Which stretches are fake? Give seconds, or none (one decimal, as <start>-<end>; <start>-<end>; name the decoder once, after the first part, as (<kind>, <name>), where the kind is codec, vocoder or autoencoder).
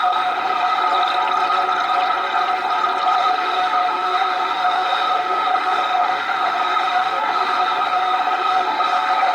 0.0-0.8 (autoencoder, DAC-VAE); 3.2-9.3